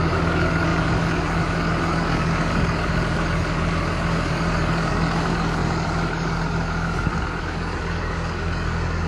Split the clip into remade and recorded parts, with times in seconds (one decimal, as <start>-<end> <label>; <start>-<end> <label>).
0.0-9.1 remade

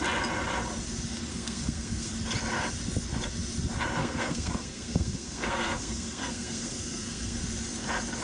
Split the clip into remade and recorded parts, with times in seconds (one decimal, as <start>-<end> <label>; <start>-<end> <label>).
0.0-1.3 recorded; 1.3-2.1 remade; 2.1-4.0 recorded; 4.0-7.4 remade; 7.4-8.2 recorded

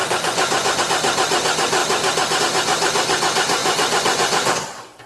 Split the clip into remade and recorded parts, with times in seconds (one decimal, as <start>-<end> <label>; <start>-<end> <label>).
0.0-0.8 remade; 0.8-3.6 recorded; 3.6-5.1 remade

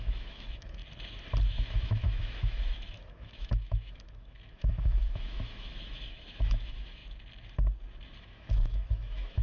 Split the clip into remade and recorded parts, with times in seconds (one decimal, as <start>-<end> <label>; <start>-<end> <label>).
0.0-0.8 remade; 0.8-1.5 recorded; 1.5-7.0 remade; 7.0-8.2 recorded; 8.2-9.4 remade